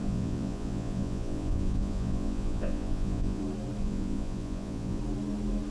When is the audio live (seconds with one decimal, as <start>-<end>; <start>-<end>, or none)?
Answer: 3.4-3.8; 5.0-5.7